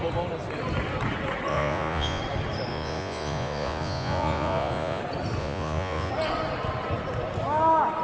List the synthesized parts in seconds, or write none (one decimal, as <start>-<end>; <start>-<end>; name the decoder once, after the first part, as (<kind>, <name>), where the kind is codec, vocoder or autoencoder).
1.5-2.2 (vocoder, Vocos); 2.7-5.0; 5.4-6.1